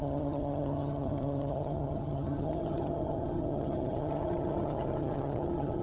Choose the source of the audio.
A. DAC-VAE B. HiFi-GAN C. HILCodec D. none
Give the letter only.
B